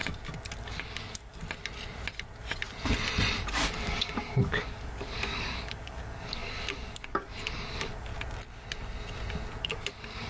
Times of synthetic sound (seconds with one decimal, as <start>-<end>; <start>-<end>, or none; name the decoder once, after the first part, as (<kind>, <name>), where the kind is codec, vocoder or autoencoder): 0.6-1.4 (codec, DAC); 3.5-8.1; 9.6-10.3